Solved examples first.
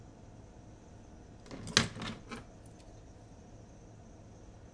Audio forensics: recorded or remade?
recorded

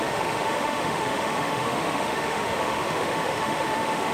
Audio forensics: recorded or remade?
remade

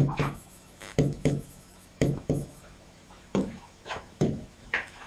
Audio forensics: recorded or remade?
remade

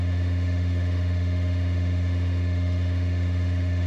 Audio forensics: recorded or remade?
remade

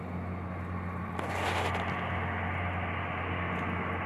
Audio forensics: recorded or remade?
recorded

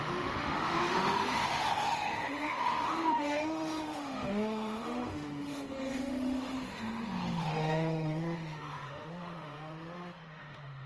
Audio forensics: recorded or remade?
remade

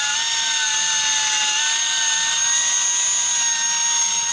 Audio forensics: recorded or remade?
recorded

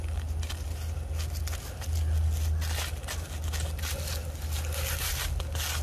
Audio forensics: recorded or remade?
recorded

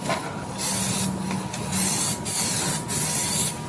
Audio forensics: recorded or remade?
recorded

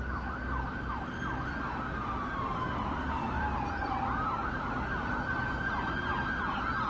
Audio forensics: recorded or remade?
recorded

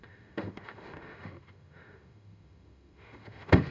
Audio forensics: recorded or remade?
remade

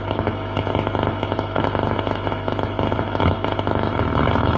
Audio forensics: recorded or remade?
remade